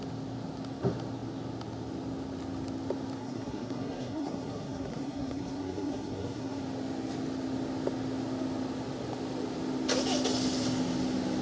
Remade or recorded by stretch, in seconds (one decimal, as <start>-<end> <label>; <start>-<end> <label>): 0.0-3.2 recorded; 3.2-6.6 remade; 6.6-11.4 recorded